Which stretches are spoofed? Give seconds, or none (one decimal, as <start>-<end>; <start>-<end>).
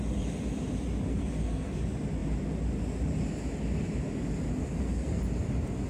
1.1-1.8; 4.6-5.2